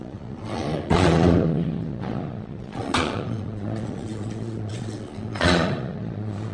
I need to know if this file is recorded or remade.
remade